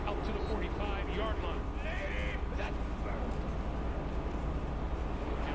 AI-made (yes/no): no